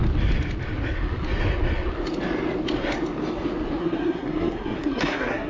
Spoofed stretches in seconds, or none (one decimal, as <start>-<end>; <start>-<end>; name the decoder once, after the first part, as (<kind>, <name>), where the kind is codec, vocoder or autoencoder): 3.8-5.5 (codec, SNAC)